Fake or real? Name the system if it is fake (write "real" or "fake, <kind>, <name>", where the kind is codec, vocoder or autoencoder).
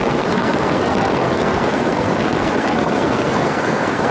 fake, codec, SNAC